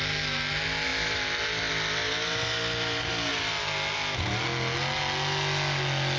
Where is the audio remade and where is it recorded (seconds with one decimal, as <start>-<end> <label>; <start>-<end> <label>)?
0.0-6.2 recorded